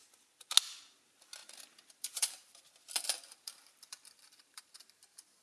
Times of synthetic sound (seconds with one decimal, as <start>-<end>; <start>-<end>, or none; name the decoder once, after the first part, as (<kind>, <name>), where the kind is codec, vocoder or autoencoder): 1.4-4.6 (vocoder, BigVGAN v2)